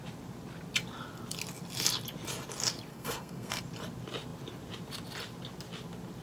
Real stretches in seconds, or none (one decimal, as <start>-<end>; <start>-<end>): 0.0-2.9; 3.6-6.2